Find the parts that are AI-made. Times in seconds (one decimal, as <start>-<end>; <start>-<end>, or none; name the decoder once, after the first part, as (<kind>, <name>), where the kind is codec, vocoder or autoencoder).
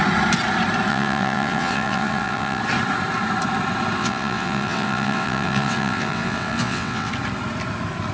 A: 0.9-2.6 (vocoder, WaveNeXt); 4.0-7.1